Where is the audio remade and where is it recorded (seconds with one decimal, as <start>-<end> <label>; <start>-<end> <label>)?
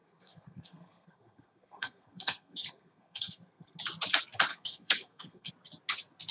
0.0-3.8 remade; 3.8-4.5 recorded; 4.5-5.5 remade; 5.5-6.3 recorded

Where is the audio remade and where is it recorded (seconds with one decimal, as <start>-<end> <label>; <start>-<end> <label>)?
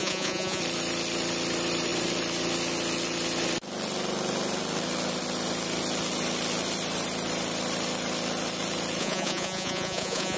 0.0-0.6 remade; 0.6-9.0 recorded; 9.0-10.4 remade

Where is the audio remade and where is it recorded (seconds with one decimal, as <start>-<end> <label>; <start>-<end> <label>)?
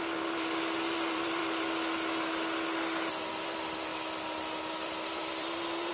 0.0-1.4 remade; 1.4-3.3 recorded; 3.3-3.9 remade; 3.9-4.7 recorded; 4.7-5.9 remade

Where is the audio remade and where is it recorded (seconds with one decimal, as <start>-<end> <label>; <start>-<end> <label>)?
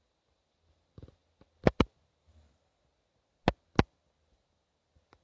0.0-5.2 recorded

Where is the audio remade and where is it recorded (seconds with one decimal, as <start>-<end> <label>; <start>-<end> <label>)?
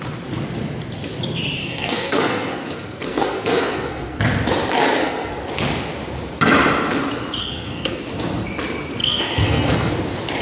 0.0-1.6 recorded; 1.6-4.2 remade; 4.2-4.7 recorded; 4.7-5.4 remade; 5.4-7.4 recorded; 7.4-8.0 remade; 8.0-9.0 recorded; 9.0-9.9 remade; 9.9-10.4 recorded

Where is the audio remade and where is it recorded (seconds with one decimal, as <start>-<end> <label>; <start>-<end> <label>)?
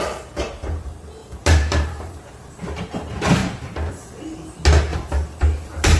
0.0-1.2 recorded; 1.2-2.2 remade; 2.2-4.9 recorded; 4.9-6.0 remade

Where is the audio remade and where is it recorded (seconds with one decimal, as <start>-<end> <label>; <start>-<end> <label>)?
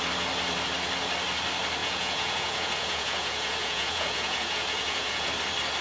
0.0-1.8 recorded; 1.8-5.3 remade; 5.3-5.8 recorded